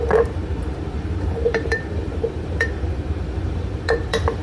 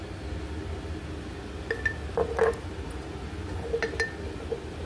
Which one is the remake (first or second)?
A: first